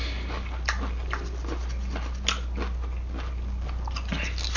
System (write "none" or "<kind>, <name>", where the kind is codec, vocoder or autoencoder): none